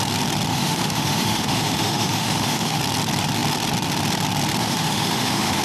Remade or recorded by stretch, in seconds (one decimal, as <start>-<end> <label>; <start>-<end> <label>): 0.0-0.5 recorded; 0.5-2.8 remade; 2.8-4.6 recorded; 4.6-5.6 remade

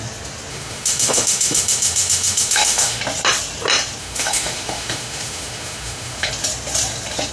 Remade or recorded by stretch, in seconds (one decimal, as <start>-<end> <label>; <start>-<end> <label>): 0.0-0.5 recorded; 0.5-3.0 remade; 3.0-4.0 recorded; 4.0-6.3 remade; 6.3-7.3 recorded